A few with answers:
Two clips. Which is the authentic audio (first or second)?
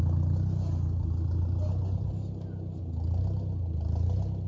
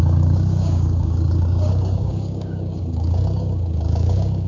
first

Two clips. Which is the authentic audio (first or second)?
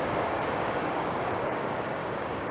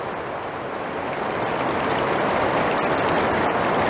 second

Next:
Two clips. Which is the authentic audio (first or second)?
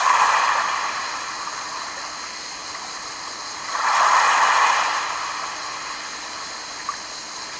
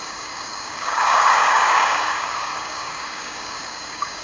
first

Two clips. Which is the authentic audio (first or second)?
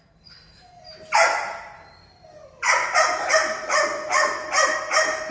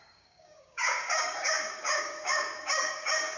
first